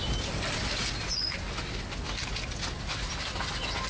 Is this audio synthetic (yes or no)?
no